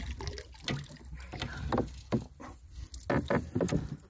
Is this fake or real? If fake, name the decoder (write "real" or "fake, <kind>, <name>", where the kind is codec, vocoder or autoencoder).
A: real